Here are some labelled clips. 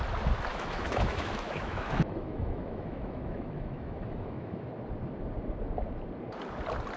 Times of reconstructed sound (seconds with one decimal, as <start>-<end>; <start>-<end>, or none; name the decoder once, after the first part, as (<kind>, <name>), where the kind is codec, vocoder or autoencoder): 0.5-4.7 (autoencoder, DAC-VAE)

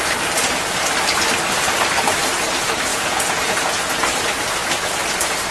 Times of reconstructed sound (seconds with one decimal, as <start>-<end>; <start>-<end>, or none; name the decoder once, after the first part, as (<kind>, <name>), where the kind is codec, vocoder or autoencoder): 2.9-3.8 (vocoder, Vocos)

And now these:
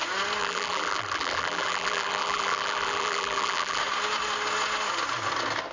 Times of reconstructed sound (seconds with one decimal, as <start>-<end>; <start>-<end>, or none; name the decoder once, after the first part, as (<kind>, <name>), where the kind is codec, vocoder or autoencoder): 0.4-3.8 (vocoder, BigVGAN v2)

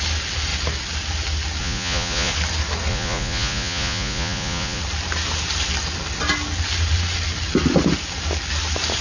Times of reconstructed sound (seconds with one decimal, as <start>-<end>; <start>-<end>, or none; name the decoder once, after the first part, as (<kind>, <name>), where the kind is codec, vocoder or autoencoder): 1.6-2.3 (vocoder, Vocos); 2.9-4.8

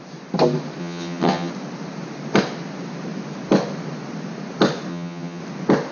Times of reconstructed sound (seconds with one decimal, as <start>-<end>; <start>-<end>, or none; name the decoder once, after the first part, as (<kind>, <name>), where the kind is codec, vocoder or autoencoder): 0.8-1.5 (vocoder, HiFi-GAN); 4.9-5.4

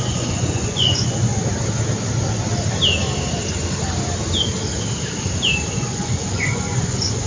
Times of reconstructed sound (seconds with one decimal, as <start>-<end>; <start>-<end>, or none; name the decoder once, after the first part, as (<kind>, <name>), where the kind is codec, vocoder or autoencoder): 0.0-1.3 (vocoder, Vocos); 5.7-7.3